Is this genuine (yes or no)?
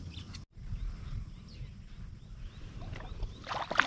yes